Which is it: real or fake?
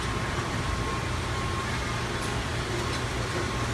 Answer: real